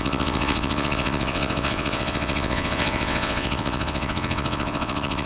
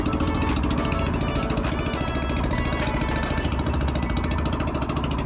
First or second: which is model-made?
first